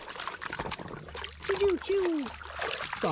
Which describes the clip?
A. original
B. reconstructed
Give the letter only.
A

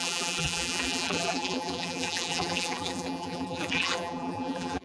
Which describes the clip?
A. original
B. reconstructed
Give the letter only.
B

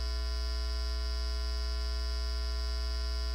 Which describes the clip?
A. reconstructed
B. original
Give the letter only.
B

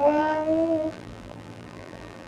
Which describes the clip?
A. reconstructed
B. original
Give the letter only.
A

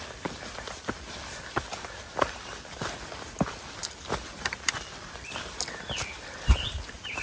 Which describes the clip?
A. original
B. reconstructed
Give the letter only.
B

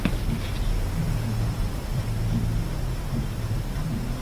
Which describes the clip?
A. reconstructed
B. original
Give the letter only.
B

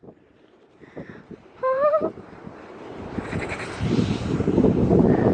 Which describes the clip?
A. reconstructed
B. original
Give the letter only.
A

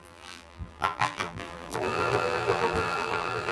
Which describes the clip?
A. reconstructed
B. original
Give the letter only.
A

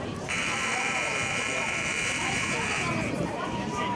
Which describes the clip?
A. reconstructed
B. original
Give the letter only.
A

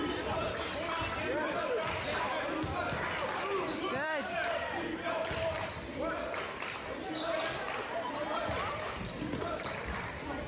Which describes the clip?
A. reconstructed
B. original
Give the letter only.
A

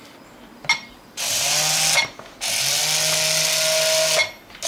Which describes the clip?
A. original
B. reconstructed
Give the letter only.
A